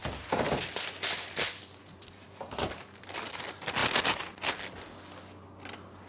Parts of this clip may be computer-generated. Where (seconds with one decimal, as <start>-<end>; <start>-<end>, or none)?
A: none

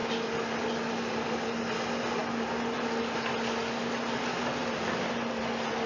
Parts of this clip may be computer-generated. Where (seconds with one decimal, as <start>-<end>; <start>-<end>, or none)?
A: none

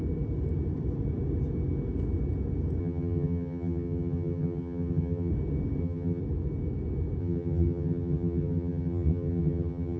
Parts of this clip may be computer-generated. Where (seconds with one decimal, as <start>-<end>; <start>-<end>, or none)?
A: 2.8-5.3; 5.8-6.2; 7.2-10.0